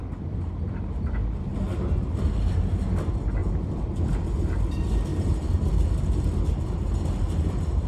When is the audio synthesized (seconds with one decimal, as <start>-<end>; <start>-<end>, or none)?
3.4-4.0; 5.1-5.7